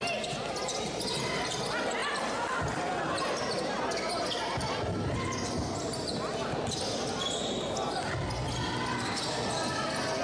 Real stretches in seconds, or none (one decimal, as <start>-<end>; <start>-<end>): 0.0-10.2